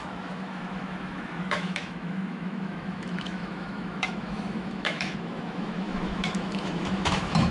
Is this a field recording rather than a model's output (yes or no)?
no